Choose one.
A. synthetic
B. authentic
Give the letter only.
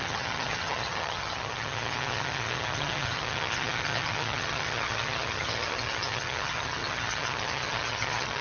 A